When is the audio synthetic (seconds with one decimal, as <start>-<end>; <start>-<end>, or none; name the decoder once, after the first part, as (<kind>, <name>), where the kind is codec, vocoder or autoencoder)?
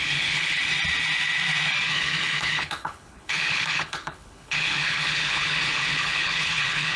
0.0-0.6 (codec, HILCodec); 1.9-7.0